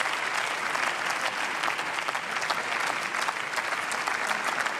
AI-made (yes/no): no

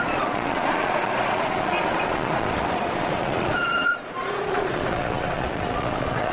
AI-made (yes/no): yes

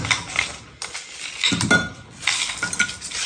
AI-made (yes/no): no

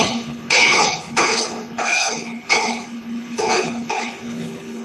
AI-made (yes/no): yes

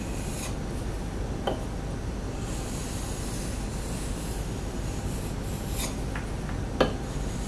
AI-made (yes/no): no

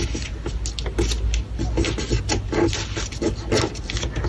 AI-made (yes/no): no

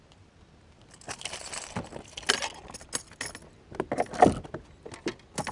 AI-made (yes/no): no